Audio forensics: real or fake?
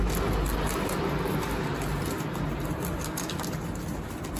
real